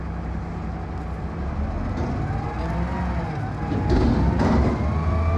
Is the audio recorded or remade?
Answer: recorded